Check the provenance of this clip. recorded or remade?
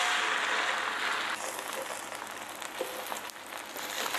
recorded